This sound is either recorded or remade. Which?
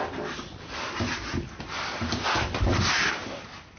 recorded